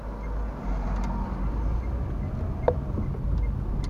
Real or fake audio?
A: real